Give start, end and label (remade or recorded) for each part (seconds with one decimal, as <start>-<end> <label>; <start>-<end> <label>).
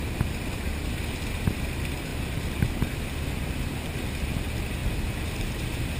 0.0-6.0 recorded